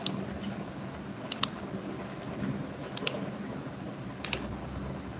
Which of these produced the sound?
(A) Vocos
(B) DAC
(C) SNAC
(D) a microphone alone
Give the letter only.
D